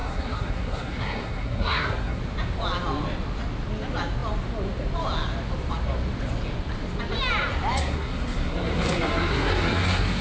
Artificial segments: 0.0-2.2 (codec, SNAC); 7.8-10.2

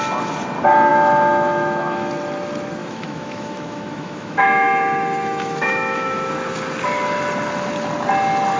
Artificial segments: 0.9-2.1 (autoencoder, DAC-VAE); 2.8-6.3

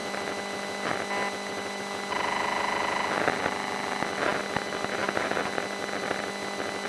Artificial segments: none

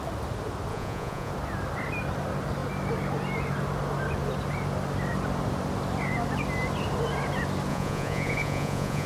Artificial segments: 0.7-1.3 (vocoder, Vocos); 7.7-9.1

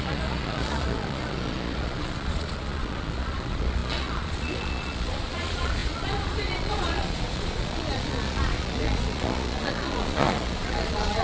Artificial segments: 0.0-11.2 (vocoder, Vocos)

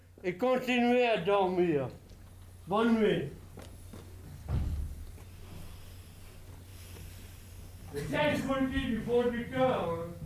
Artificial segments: none

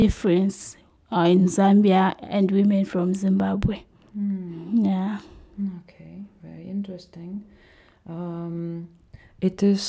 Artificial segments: 0.0-0.5 (autoencoder, DAC-VAE); 1.4-2.2